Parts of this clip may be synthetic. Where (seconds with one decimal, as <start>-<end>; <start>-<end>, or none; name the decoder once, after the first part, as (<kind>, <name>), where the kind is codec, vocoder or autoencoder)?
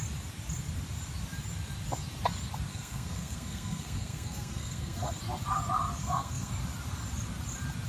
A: 2.7-5.2 (codec, SNAC); 6.0-6.5